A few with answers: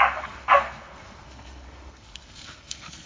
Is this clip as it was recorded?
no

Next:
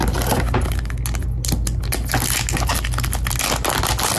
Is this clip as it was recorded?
yes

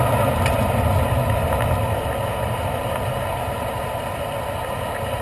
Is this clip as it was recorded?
yes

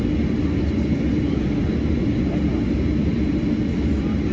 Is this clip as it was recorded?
yes